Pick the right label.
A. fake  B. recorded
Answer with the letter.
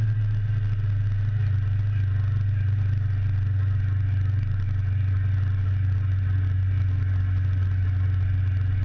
B